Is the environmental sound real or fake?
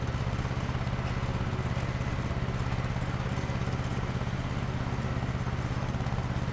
real